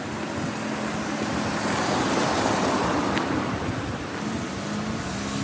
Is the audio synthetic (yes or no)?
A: no